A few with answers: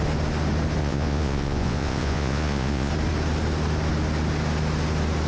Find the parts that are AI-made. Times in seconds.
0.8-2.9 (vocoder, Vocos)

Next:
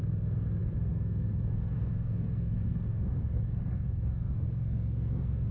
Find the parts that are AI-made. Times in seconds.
0.0-5.5 (codec, SNAC)